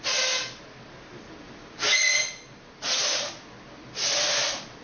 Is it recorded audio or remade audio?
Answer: recorded